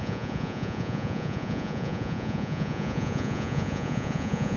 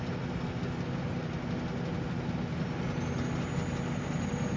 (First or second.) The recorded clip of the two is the second